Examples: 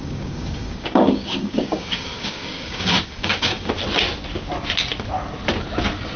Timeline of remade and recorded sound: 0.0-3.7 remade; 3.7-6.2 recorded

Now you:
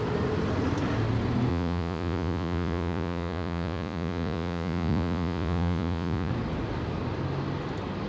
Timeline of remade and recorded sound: 0.0-1.5 recorded; 1.5-6.3 remade; 6.3-8.1 recorded

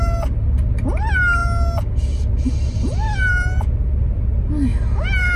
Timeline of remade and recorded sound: 0.0-5.4 recorded

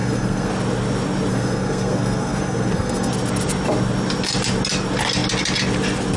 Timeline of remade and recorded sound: 0.0-0.5 remade; 0.5-1.3 recorded; 1.3-3.1 remade; 3.1-6.2 recorded

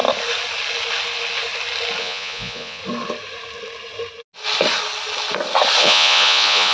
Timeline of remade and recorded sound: 0.0-2.0 recorded; 2.0-2.8 remade; 2.8-5.8 recorded; 5.8-6.7 remade

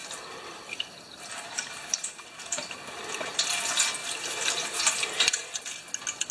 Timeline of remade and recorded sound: 0.0-3.0 remade; 3.0-4.0 recorded; 4.0-5.1 remade; 5.1-6.3 recorded

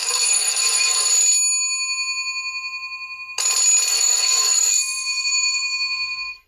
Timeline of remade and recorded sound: 0.0-1.1 remade; 1.1-3.9 recorded; 3.9-6.5 remade